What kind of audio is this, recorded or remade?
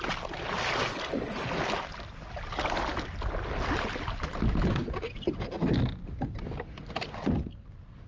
recorded